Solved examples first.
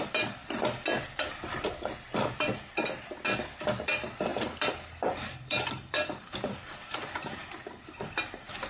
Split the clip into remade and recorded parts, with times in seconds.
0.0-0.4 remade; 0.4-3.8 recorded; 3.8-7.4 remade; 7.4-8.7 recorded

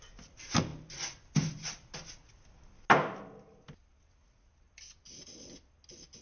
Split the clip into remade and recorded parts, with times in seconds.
0.0-6.2 recorded